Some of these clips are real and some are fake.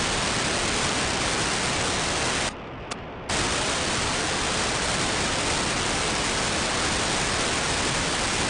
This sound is real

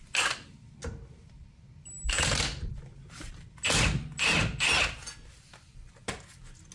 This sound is real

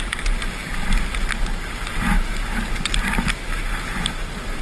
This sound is real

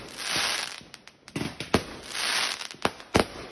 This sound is real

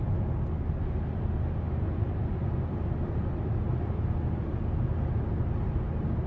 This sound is real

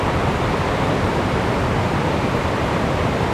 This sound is real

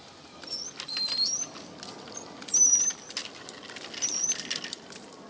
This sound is real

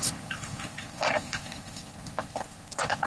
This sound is fake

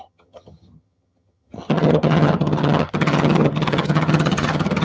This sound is fake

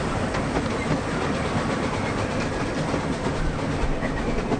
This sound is real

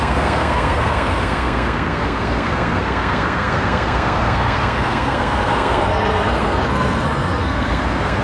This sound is fake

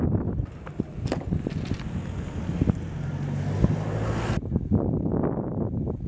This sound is real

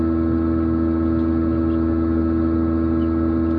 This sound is real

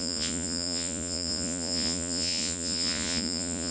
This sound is fake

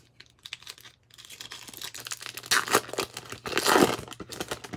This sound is real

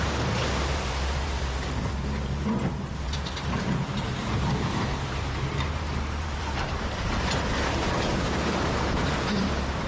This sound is fake